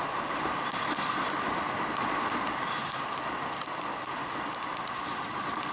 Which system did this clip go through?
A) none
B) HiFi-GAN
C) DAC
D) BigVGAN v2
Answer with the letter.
A